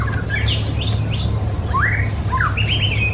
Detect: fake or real real